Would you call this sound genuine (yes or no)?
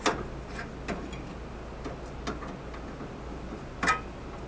yes